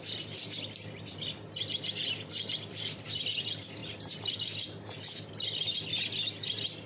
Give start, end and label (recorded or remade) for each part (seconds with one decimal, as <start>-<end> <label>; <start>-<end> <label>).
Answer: 0.0-6.9 recorded